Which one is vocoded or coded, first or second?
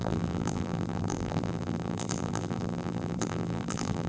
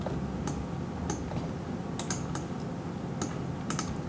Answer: first